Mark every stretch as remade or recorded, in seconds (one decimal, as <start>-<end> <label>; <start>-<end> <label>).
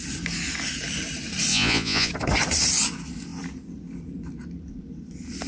0.0-1.5 recorded; 1.5-2.1 remade; 2.1-5.5 recorded